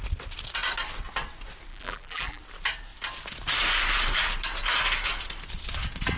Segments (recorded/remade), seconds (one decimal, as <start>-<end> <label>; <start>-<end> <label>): 0.0-1.7 recorded; 1.7-2.4 remade; 2.4-6.2 recorded